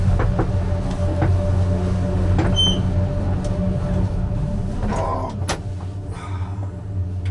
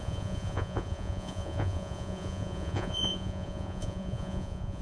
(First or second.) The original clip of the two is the first